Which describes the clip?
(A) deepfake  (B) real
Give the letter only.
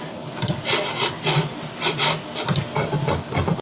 B